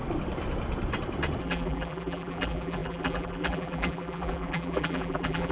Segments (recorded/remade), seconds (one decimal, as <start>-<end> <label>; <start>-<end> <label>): 0.0-1.4 recorded; 1.4-5.5 remade